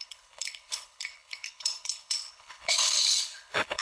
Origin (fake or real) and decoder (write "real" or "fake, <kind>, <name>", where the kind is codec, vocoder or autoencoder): fake, codec, HILCodec